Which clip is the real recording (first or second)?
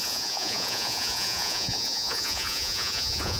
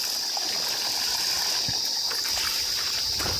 second